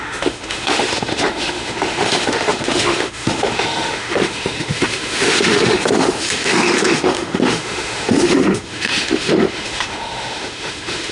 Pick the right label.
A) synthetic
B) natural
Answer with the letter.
A